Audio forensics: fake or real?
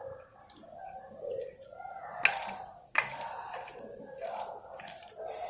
real